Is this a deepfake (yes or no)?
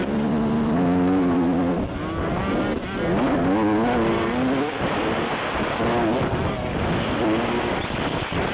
no